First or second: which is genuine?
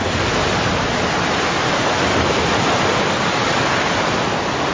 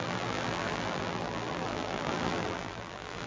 first